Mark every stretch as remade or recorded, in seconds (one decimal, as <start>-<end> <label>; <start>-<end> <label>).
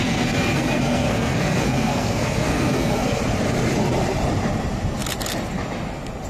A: 0.0-3.2 remade; 3.2-6.3 recorded